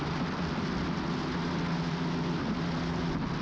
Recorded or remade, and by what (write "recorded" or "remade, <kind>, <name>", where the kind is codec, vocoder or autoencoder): recorded